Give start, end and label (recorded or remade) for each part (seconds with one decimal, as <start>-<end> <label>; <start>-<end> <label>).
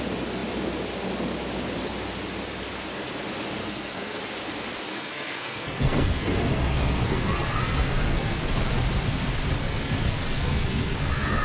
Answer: 0.0-3.6 recorded; 3.6-4.2 remade; 4.2-4.9 recorded; 4.9-8.4 remade; 8.4-9.6 recorded; 9.6-11.4 remade